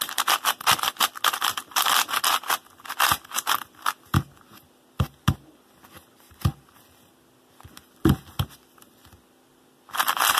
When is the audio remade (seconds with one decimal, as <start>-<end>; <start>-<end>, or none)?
none